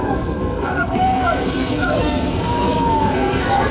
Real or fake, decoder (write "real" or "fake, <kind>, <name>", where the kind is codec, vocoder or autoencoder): fake, codec, SNAC